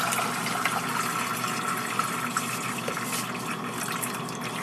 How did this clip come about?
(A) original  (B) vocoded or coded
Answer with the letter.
A